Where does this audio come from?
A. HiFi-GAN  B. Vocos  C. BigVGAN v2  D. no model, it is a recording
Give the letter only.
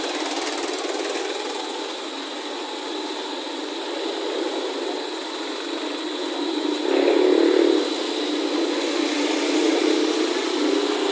D